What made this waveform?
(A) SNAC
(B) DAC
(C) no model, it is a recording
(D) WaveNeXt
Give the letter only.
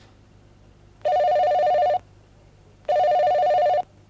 C